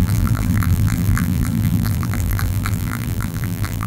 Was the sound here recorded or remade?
remade